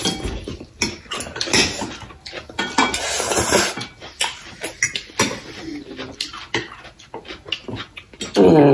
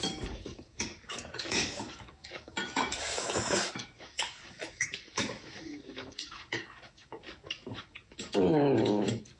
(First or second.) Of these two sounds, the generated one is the second